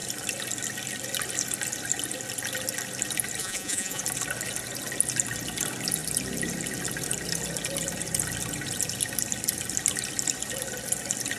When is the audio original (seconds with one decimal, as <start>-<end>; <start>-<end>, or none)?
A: 0.0-3.4; 4.0-11.4